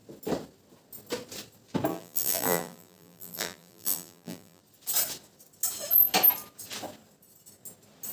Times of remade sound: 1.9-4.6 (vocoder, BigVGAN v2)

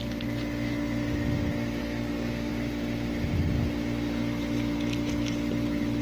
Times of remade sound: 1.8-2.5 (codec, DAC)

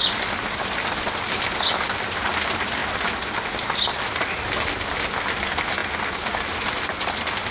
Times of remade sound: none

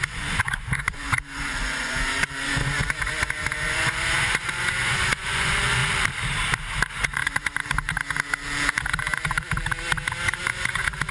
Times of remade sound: 0.0-5.8 (vocoder, Vocos); 6.9-7.5; 10.2-11.1

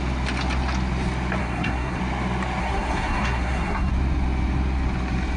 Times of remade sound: 1.4-2.0 (codec, SNAC); 2.6-3.9

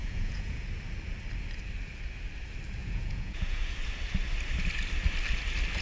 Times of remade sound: 0.0-0.6 (vocoder, Vocos); 2.8-3.6